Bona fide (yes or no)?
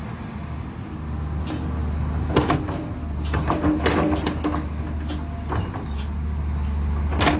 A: yes